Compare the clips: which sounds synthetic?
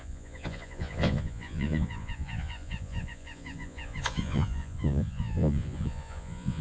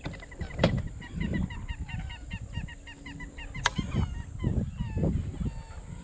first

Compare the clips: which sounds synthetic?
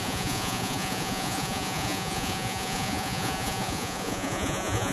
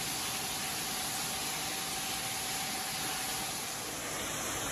first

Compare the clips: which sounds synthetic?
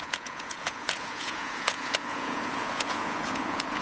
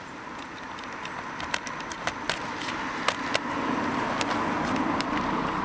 first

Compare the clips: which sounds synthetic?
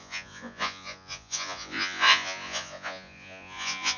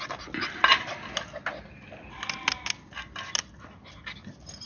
first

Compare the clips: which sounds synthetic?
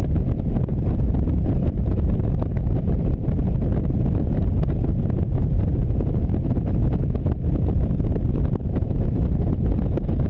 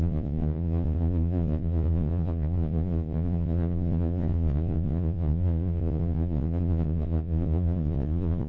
second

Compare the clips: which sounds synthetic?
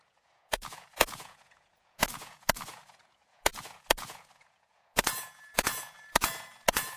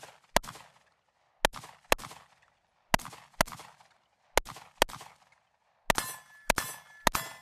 first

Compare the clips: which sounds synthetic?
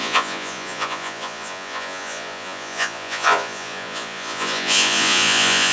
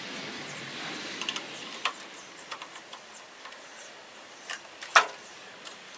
first